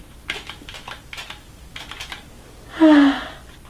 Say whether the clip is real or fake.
real